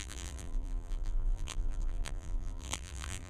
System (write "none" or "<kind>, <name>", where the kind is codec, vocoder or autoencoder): vocoder, BigVGAN v2